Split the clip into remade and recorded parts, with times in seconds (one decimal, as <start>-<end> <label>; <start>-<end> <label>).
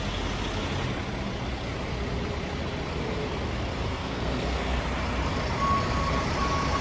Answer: 0.0-3.9 recorded; 3.9-4.8 remade; 4.8-6.8 recorded